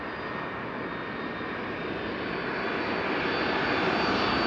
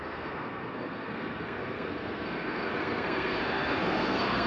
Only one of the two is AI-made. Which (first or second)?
second